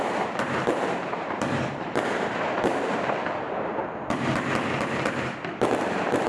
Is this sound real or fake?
fake